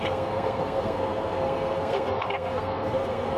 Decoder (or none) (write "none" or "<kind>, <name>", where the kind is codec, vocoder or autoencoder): codec, SNAC